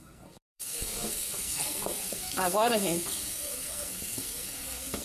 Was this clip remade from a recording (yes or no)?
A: yes